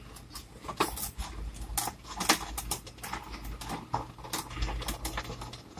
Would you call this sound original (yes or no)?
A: yes